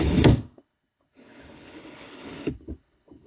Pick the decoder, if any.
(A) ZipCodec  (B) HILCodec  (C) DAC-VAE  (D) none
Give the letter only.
B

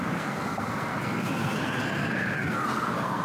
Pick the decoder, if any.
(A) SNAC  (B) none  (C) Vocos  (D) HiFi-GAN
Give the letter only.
A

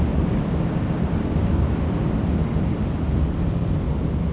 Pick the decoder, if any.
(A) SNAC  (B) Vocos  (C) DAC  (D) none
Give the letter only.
D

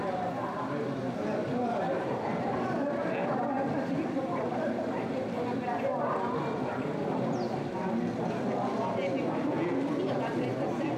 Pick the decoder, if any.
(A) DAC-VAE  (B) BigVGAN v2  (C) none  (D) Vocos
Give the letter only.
C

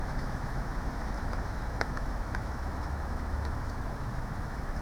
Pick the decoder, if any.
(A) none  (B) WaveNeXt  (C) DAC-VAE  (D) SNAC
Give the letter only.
C